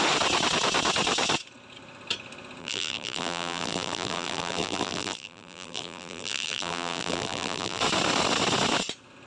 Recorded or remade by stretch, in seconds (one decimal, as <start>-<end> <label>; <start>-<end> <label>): 0.0-2.6 recorded; 2.6-7.8 remade; 7.8-9.3 recorded